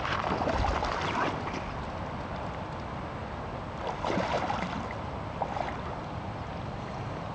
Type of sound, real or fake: real